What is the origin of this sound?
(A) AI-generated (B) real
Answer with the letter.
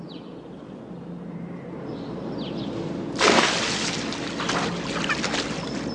B